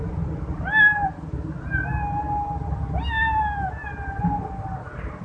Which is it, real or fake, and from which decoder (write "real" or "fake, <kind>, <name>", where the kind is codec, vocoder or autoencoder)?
real